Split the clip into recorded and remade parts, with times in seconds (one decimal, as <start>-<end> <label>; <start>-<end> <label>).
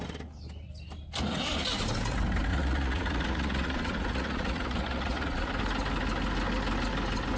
0.0-2.5 recorded; 2.5-5.5 remade; 5.5-7.4 recorded